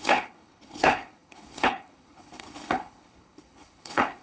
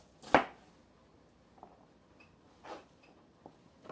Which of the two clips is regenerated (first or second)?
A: first